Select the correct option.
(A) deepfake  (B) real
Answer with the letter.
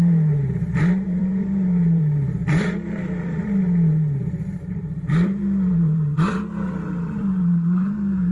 A